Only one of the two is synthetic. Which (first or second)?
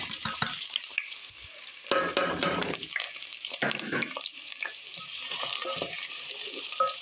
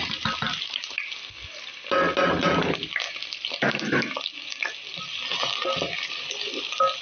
first